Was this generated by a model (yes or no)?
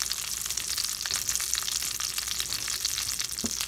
no